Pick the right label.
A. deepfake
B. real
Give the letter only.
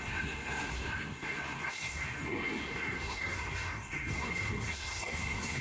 A